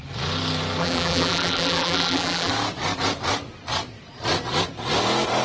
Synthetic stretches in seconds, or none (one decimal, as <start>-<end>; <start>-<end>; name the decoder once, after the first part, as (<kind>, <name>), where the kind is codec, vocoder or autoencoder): 0.8-2.5 (vocoder, BigVGAN v2)